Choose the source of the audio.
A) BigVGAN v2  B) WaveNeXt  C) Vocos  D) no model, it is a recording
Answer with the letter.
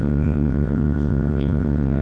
B